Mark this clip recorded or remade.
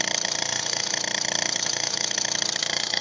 remade